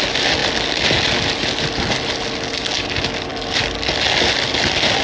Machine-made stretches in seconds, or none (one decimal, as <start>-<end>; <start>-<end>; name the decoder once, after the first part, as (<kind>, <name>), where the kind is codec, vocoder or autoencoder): none